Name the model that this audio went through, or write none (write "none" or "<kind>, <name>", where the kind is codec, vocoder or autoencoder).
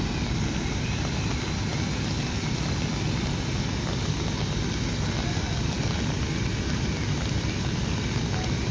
none